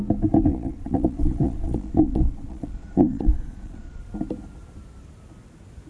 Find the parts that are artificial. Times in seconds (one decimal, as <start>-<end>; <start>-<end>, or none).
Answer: 0.5-4.0